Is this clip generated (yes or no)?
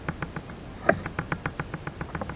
yes